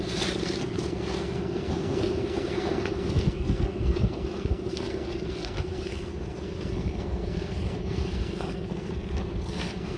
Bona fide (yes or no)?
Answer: no